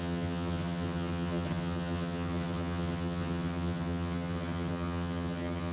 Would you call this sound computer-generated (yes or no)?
yes